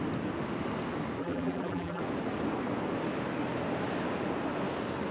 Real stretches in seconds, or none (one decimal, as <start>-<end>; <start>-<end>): 0.0-1.2; 2.0-5.1